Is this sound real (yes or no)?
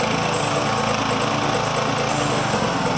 yes